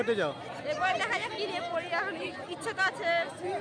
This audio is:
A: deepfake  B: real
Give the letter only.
B